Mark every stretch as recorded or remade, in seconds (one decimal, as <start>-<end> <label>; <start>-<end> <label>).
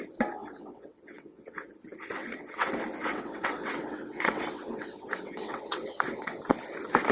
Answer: 0.0-0.4 recorded; 0.4-1.7 remade; 1.7-2.2 recorded; 2.2-2.7 remade; 2.7-3.1 recorded; 3.1-6.4 remade; 6.4-7.1 recorded